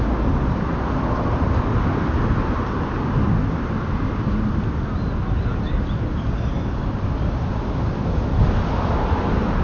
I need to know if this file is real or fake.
real